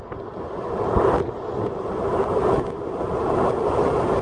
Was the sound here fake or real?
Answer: real